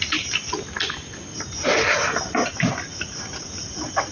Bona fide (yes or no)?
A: yes